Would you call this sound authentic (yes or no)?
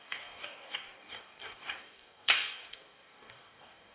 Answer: no